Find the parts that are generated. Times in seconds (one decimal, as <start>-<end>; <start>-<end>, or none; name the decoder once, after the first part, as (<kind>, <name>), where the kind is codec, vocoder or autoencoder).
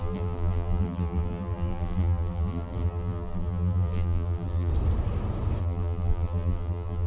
0.0-4.7 (vocoder, BigVGAN v2); 5.6-7.1